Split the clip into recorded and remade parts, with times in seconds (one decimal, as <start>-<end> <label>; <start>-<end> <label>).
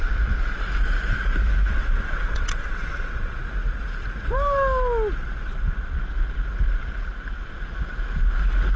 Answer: 0.0-1.7 recorded; 1.7-3.4 remade; 3.4-8.8 recorded